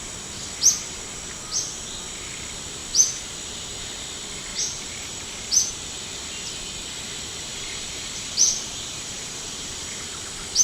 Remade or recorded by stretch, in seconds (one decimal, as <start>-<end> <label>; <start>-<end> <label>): 0.0-4.5 recorded; 4.5-5.7 remade; 5.7-7.5 recorded; 7.5-10.0 remade; 10.0-10.6 recorded

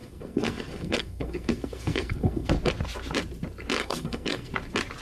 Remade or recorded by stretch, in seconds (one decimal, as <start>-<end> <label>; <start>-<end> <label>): 0.0-2.5 remade; 2.5-3.8 recorded; 3.8-4.5 remade; 4.5-5.0 recorded

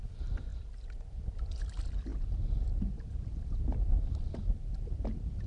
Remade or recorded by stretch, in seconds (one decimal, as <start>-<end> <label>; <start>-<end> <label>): 0.0-0.5 remade; 0.5-1.1 recorded; 1.1-2.1 remade; 2.1-4.2 recorded; 4.2-5.5 remade

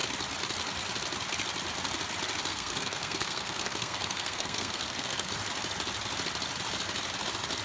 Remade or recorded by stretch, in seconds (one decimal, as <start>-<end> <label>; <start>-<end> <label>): 0.0-2.5 recorded; 2.5-5.3 remade; 5.3-7.6 recorded